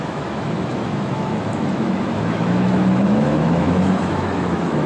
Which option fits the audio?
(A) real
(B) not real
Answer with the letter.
B